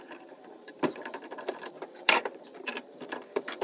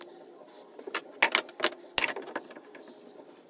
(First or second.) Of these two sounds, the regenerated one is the first